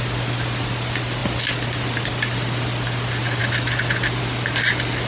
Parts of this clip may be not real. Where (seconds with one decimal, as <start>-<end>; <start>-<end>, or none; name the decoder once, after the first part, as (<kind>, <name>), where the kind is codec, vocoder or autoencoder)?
none